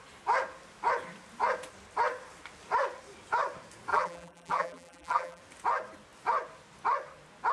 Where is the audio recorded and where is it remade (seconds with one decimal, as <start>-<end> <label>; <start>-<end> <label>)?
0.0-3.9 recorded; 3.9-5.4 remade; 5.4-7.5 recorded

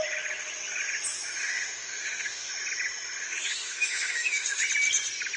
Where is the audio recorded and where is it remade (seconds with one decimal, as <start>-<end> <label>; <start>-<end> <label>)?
0.0-1.4 recorded; 1.4-2.5 remade; 2.5-3.2 recorded; 3.2-4.6 remade; 4.6-5.4 recorded

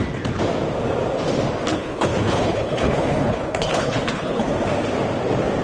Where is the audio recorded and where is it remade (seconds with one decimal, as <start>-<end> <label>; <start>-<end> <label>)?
0.0-1.7 recorded; 1.7-4.5 remade; 4.5-5.6 recorded